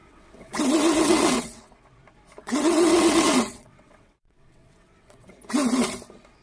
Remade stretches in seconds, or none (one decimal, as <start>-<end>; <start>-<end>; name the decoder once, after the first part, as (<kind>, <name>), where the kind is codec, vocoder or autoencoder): 0.0-0.6 (vocoder, WaveNeXt); 1.0-1.7; 2.4-5.3